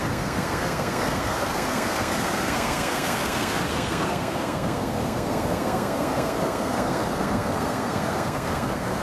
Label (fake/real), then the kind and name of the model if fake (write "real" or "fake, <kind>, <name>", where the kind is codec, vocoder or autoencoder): fake, codec, SNAC